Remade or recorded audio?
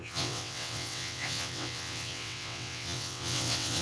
remade